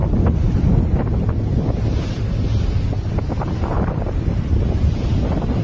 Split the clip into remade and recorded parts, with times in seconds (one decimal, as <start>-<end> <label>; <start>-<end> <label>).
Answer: 0.0-0.8 remade; 0.8-5.6 recorded